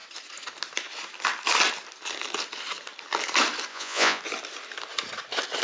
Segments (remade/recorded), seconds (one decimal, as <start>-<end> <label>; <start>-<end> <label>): 0.0-3.7 recorded; 3.7-4.2 remade; 4.2-5.6 recorded